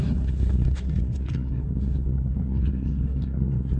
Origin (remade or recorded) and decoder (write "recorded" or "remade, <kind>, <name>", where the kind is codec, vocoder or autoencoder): remade, codec, SNAC